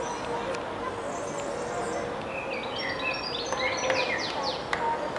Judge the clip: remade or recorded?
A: recorded